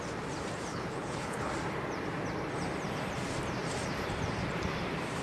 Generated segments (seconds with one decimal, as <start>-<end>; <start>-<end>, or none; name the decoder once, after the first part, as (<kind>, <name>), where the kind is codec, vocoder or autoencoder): 0.7-1.5 (codec, HILCodec)